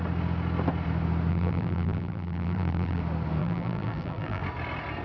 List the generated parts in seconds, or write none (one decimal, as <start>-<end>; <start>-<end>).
1.3-3.0; 3.4-4.4